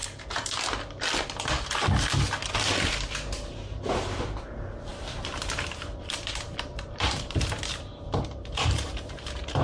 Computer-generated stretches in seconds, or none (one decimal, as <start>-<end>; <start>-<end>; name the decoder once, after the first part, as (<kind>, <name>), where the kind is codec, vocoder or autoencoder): 2.5-4.9 (vocoder, BigVGAN v2); 6.0-9.6